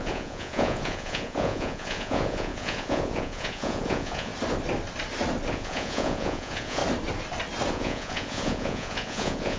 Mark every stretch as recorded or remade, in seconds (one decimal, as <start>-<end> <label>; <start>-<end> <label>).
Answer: 0.0-4.3 remade; 4.3-5.5 recorded; 5.5-6.8 remade; 6.8-7.7 recorded; 7.7-9.6 remade